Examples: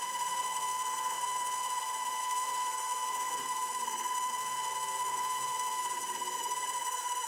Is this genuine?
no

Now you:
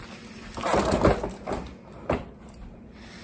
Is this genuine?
yes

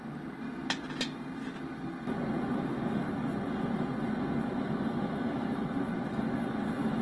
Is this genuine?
yes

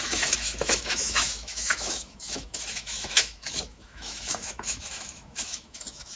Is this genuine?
no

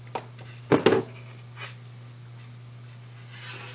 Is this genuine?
yes